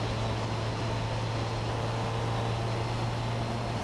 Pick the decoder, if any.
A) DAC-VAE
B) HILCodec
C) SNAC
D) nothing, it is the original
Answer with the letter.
D